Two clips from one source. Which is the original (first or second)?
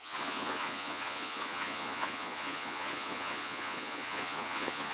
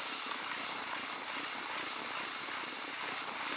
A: second